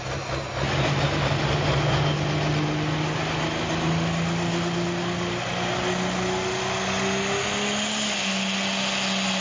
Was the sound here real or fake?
real